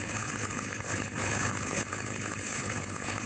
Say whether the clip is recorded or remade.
remade